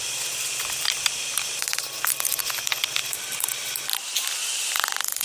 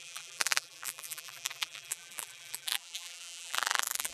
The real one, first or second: first